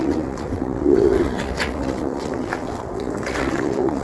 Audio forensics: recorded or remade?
remade